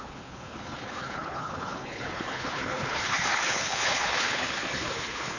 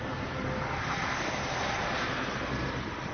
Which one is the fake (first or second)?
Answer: first